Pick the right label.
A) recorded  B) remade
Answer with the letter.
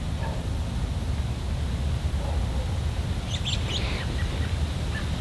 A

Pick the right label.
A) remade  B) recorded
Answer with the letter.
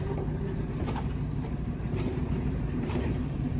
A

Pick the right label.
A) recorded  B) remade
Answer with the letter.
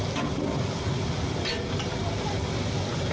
A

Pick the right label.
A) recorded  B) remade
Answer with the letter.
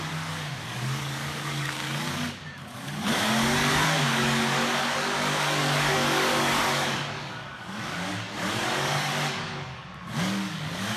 B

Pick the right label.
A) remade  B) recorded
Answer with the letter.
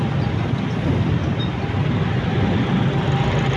B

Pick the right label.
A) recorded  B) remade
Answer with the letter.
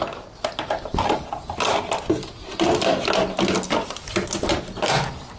A